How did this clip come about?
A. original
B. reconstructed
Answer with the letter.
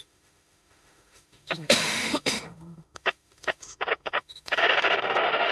B